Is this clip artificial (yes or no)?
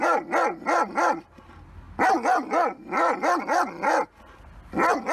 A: no